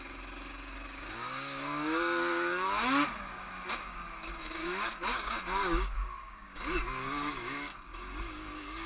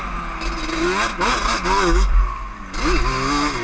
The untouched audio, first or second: second